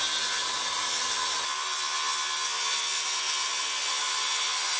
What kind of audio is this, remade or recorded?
recorded